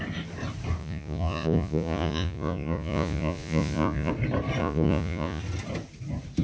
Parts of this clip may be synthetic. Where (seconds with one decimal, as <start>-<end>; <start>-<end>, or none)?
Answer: 0.8-4.1; 4.6-5.4